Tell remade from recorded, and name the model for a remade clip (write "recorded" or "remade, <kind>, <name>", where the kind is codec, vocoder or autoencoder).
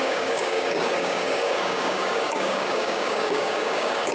remade, codec, DAC